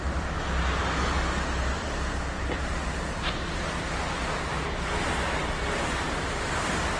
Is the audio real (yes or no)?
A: yes